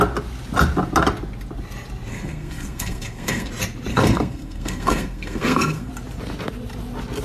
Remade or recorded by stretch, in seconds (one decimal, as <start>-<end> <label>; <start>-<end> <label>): 0.0-2.1 recorded; 2.1-3.5 remade; 3.5-3.9 recorded; 3.9-5.9 remade; 5.9-7.2 recorded